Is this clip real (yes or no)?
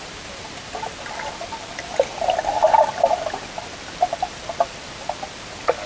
yes